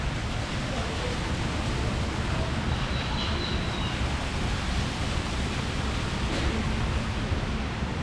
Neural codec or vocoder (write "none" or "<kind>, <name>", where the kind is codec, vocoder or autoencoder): none